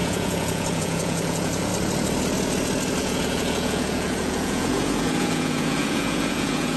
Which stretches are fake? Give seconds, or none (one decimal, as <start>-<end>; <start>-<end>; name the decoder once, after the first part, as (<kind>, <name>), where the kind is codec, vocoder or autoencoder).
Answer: 0.0-1.7 (vocoder, Vocos); 3.0-6.8